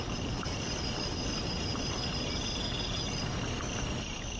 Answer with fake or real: real